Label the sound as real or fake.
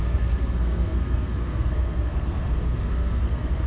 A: fake